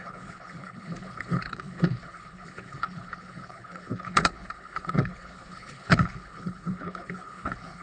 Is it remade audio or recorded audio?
remade